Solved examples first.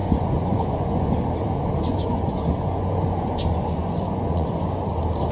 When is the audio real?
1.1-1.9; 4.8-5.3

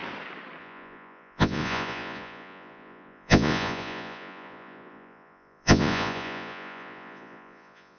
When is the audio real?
0.0-0.6

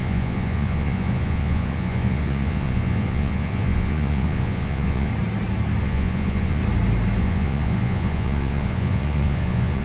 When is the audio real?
5.1-5.8; 6.6-7.2

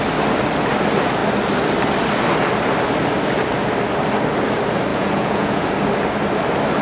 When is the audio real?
0.0-4.9; 5.7-6.8

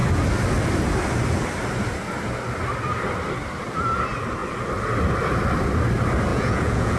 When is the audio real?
0.0-6.3

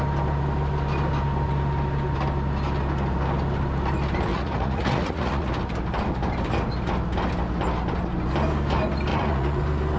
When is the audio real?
0.0-4.3; 5.5-9.1; 9.6-10.0